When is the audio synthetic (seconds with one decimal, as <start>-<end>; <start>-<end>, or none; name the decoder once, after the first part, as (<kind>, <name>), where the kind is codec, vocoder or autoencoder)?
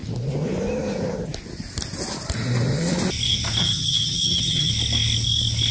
3.6-4.7 (vocoder, HiFi-GAN)